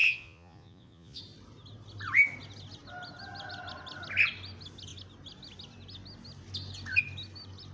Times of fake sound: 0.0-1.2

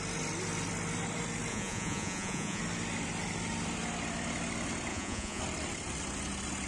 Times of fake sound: 1.5-2.6; 4.9-5.4

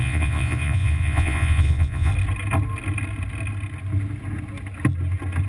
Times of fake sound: 0.0-2.1